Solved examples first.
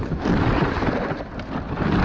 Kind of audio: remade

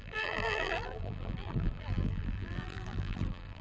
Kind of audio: remade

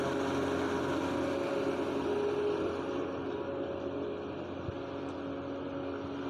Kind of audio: recorded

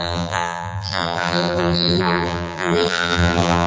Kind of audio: remade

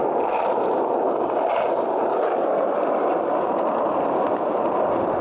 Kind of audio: recorded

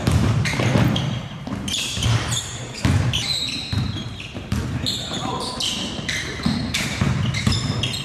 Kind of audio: remade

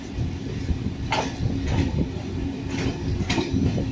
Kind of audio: recorded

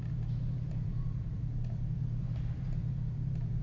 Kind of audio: remade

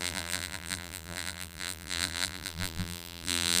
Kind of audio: remade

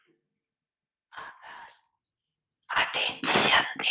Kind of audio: remade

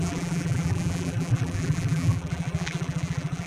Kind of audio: remade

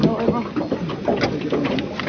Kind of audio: recorded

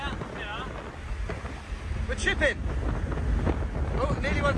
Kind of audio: recorded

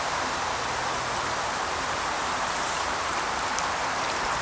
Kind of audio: remade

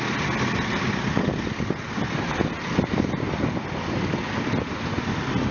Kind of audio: recorded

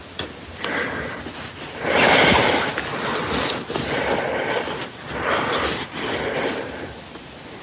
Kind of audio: recorded